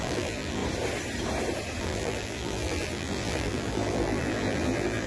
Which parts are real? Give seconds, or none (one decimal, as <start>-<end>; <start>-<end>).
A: 0.6-1.8

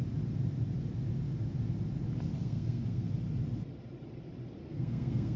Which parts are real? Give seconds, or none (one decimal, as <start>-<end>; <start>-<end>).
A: 0.0-2.4; 3.1-4.6

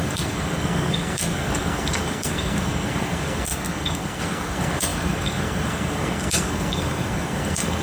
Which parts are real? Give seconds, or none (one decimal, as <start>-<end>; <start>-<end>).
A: none

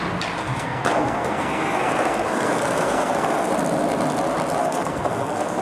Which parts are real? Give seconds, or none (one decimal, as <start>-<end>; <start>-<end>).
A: 0.0-0.4; 3.5-4.6